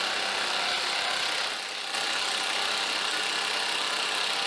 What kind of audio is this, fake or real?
real